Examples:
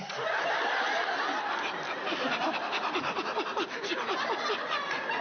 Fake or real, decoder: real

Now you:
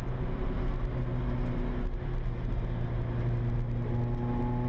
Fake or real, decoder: real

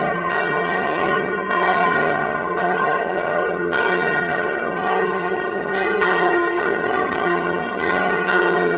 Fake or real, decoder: fake, vocoder, HiFi-GAN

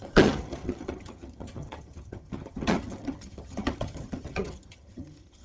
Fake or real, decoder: fake, vocoder, HiFi-GAN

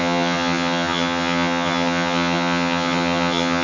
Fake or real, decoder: fake, vocoder, HiFi-GAN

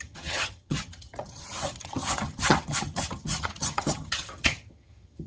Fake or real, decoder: fake, vocoder, HiFi-GAN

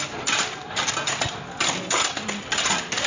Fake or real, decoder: real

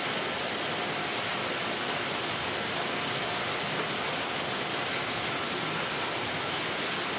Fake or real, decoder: real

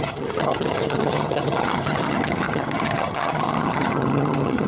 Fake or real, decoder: fake, vocoder, HiFi-GAN